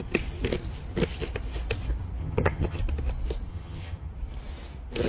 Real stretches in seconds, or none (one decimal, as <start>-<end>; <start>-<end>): 0.0-2.2; 2.8-3.5; 4.1-5.1